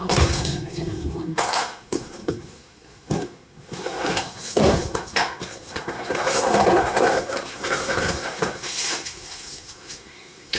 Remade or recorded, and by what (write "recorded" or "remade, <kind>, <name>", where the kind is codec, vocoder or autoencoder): remade, codec, SNAC